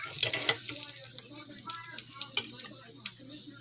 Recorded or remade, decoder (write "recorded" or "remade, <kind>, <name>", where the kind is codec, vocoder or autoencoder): recorded